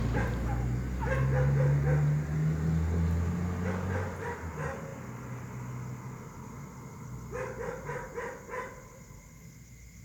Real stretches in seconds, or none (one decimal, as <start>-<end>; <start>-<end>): 0.0-10.0